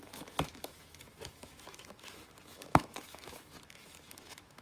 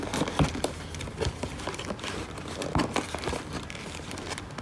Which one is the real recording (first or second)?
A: second